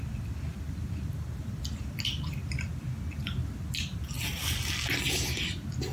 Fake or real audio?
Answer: real